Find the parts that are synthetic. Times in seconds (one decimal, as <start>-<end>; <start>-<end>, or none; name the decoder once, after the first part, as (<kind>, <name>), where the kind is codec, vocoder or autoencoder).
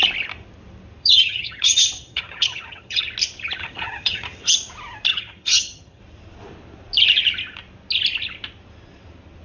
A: 1.0-3.0 (vocoder, HiFi-GAN); 3.6-4.5; 5.1-6.0